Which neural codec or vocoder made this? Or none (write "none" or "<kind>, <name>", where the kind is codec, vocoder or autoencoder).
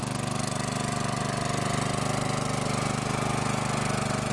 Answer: none